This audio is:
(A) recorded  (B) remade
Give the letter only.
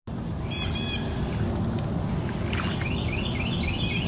A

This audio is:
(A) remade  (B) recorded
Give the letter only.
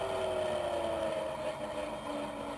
B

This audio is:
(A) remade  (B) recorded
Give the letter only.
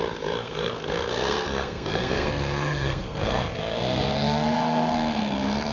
A